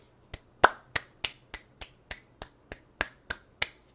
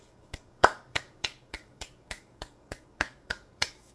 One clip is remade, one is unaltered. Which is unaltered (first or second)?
first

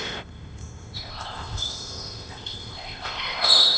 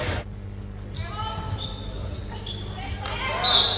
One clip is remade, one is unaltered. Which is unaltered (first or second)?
second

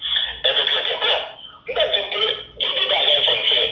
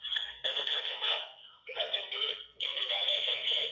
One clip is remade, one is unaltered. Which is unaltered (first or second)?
first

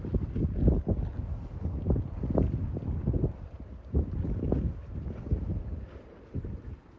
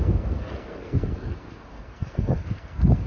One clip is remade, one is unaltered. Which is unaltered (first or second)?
first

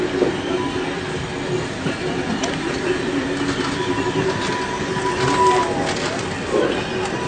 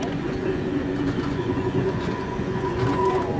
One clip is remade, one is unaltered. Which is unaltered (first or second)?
first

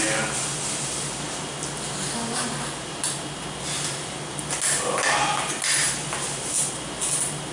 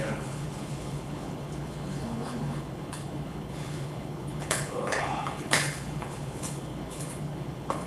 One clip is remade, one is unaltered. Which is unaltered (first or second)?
first